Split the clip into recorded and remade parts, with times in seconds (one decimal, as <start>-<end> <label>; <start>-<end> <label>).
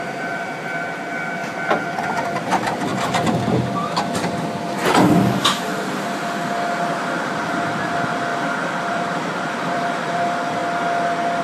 0.0-1.4 remade; 1.4-2.1 recorded; 2.1-2.9 remade; 2.9-6.9 recorded; 6.9-8.3 remade; 8.3-8.9 recorded; 8.9-10.6 remade; 10.6-11.4 recorded